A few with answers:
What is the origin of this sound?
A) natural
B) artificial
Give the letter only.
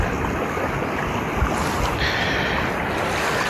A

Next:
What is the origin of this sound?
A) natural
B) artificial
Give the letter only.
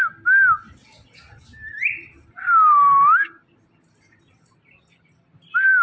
A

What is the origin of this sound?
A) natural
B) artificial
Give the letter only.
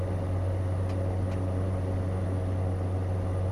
A